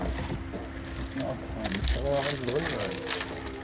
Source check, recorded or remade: recorded